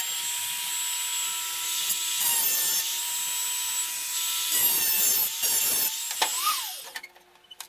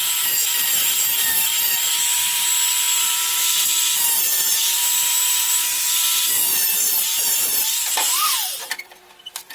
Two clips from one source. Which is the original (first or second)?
first